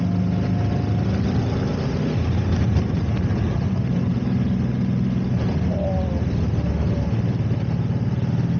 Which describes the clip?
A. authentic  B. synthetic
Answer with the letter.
A